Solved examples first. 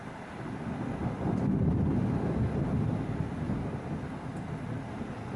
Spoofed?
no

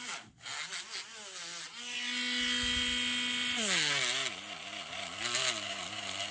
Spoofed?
no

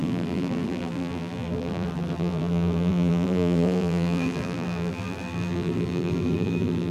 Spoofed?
yes